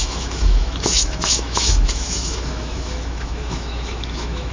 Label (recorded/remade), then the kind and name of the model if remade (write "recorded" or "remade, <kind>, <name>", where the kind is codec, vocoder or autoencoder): remade, autoencoder, DAC-VAE